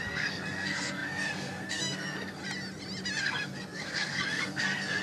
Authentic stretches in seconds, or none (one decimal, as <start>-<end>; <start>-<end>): 2.4-3.2